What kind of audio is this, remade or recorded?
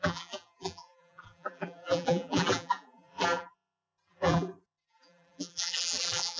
remade